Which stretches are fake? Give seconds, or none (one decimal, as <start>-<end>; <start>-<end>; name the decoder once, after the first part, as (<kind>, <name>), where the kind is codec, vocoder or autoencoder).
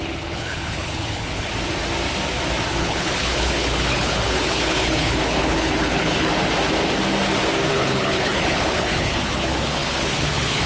0.0-1.5 (codec, HILCodec); 2.7-6.3; 7.7-10.7